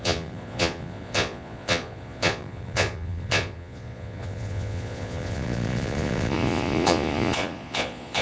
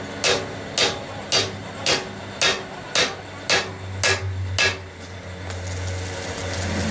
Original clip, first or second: second